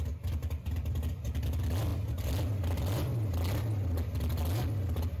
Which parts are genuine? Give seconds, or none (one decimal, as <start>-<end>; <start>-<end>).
0.0-5.2